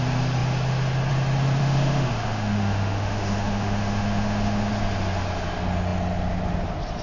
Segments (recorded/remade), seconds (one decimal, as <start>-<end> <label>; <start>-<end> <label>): 0.0-1.6 recorded; 1.6-4.7 remade; 4.7-7.0 recorded